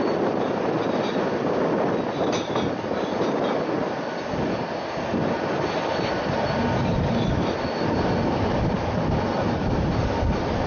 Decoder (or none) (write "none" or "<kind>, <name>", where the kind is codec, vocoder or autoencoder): none